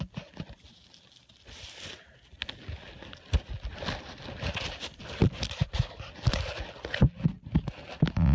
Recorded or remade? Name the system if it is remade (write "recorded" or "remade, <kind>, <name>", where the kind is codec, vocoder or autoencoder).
recorded